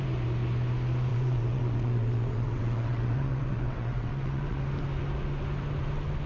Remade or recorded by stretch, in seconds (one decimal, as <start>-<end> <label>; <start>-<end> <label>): 0.0-1.1 recorded; 1.1-4.6 remade; 4.6-6.3 recorded